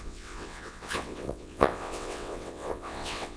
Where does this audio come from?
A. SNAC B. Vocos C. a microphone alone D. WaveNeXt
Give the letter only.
D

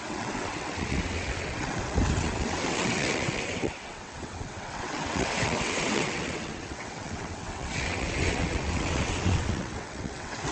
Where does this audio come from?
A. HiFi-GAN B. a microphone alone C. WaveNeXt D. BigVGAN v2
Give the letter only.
C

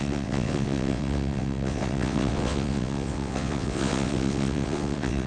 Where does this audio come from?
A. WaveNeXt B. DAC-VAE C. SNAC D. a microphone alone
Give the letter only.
A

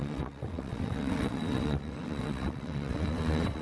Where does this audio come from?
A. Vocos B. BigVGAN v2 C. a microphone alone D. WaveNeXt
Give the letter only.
D